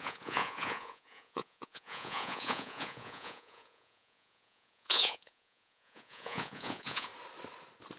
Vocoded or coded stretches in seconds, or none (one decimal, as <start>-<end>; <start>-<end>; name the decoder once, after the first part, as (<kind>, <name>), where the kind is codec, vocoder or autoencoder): 0.0-7.1 (vocoder, Vocos)